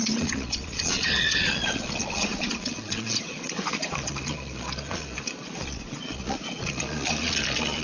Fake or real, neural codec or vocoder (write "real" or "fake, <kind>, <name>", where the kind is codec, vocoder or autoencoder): fake, vocoder, Vocos